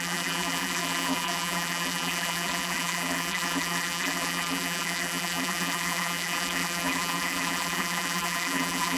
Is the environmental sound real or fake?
fake